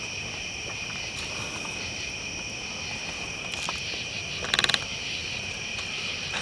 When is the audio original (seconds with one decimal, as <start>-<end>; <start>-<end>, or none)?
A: 0.0-6.4